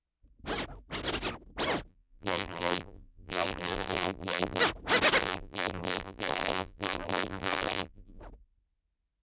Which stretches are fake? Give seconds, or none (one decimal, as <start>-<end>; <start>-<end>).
1.9-4.6; 5.2-8.2